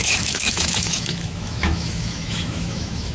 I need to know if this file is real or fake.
fake